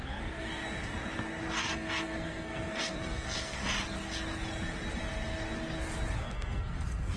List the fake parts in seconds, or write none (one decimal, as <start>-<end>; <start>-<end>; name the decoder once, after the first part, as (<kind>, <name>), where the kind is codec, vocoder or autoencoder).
0.0-0.5 (codec, SNAC); 1.5-3.6; 6.2-7.2